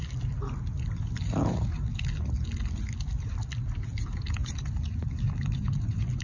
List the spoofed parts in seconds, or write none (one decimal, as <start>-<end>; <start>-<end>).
none